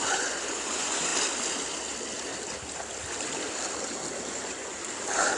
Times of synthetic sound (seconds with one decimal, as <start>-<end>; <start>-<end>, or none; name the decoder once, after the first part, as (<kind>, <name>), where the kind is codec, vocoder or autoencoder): 0.0-1.1 (vocoder, Vocos); 4.3-4.8

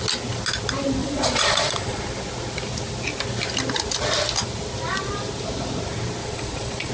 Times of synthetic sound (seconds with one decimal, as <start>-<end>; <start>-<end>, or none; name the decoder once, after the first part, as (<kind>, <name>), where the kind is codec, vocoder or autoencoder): 1.0-2.0 (vocoder, Vocos); 6.2-6.9

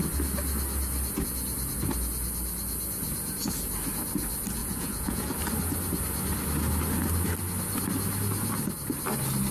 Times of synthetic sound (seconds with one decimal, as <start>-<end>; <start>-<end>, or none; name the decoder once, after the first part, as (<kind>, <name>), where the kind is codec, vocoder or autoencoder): 4.6-5.4 (vocoder, Vocos)

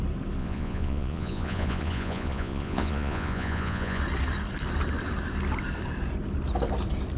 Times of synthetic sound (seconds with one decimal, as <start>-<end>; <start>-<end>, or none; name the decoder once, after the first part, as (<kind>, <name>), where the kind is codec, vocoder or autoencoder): 0.4-4.0 (vocoder, Vocos)

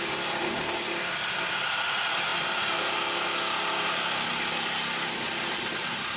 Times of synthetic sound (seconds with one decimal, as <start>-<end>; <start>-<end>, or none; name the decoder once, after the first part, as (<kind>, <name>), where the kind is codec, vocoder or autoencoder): none

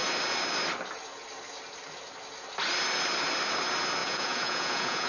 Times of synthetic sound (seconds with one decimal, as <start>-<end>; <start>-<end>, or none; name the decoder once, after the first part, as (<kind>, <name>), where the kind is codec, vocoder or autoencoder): 4.0-5.1 (vocoder, Vocos)

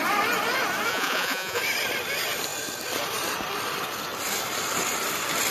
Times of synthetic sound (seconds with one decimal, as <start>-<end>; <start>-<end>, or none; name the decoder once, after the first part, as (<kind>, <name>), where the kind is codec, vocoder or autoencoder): 0.9-1.6 (vocoder, Vocos)